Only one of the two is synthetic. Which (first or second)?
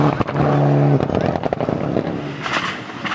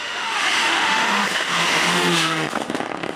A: second